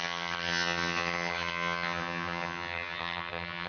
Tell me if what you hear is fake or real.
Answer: fake